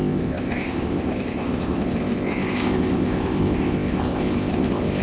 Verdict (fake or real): fake